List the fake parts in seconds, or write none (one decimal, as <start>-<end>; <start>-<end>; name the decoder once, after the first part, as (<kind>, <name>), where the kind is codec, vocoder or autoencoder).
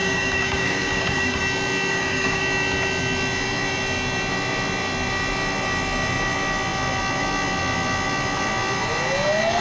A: 0.0-1.4 (codec, DAC); 1.9-2.4